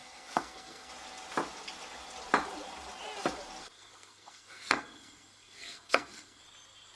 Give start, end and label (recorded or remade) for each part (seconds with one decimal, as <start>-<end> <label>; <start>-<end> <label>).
0.0-0.9 remade; 0.9-3.6 recorded; 3.6-6.4 remade; 6.4-7.0 recorded